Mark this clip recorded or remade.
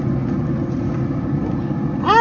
recorded